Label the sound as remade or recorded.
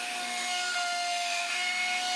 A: remade